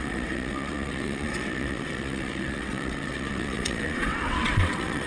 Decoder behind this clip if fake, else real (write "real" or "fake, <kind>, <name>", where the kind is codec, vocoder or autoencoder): fake, vocoder, WaveNeXt